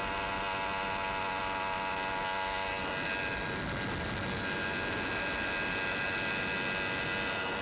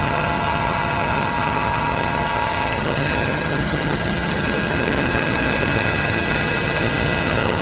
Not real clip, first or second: second